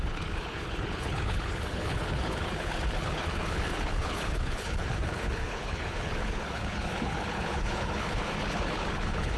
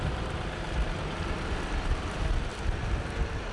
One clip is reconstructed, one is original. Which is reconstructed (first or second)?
first